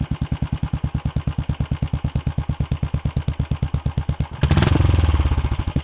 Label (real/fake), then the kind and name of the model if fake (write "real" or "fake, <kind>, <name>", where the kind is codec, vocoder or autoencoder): real